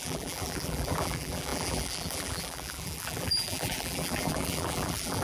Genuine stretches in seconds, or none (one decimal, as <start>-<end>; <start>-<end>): none